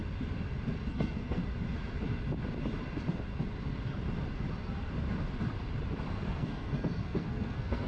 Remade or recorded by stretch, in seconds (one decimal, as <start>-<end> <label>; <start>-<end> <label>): 0.0-0.9 recorded; 0.9-1.4 remade; 1.4-6.1 recorded; 6.1-7.9 remade